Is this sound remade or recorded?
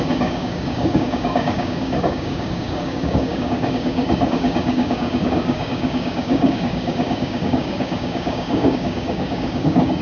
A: remade